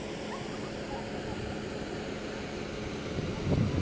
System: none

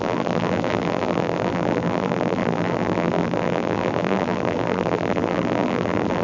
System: vocoder, BigVGAN v2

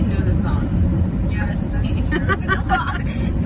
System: vocoder, BigVGAN v2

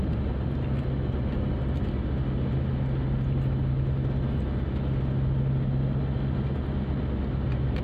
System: none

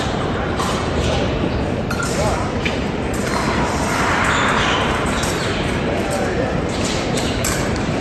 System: vocoder, BigVGAN v2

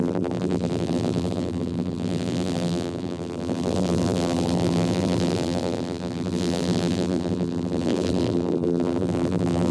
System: vocoder, BigVGAN v2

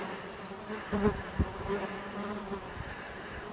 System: vocoder, BigVGAN v2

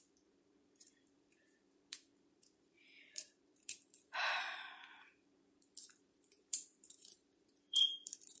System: vocoder, BigVGAN v2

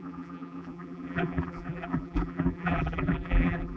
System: vocoder, BigVGAN v2